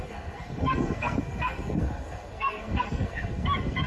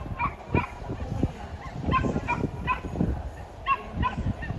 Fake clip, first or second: first